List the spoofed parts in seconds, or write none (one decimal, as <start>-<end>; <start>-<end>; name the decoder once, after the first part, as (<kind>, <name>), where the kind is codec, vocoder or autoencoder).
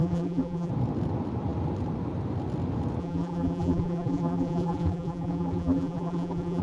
0.0-0.7 (vocoder, BigVGAN v2); 3.0-6.6